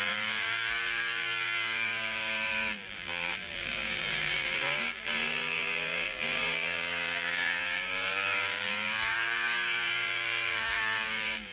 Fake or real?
fake